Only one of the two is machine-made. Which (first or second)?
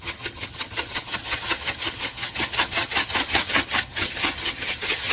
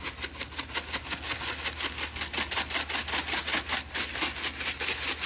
first